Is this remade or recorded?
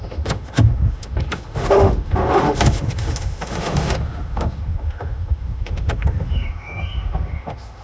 remade